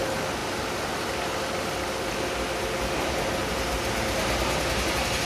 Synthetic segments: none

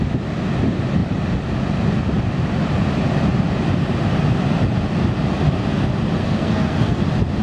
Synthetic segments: 6.2-7.0

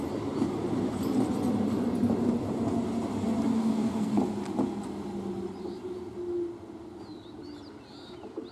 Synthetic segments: 3.6-4.2

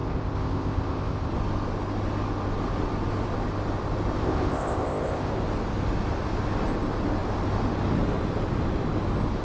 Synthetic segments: 0.0-1.3; 4.2-5.3

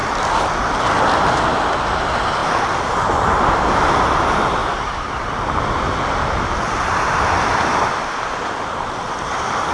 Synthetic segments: none